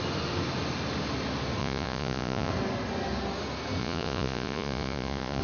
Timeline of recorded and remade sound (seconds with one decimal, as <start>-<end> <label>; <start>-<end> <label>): 0.0-1.6 recorded; 1.6-2.5 remade; 2.5-3.8 recorded; 3.8-5.4 remade